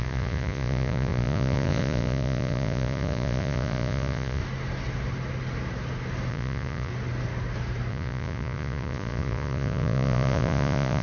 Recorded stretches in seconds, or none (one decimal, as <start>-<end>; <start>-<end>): 4.4-6.3; 6.9-7.9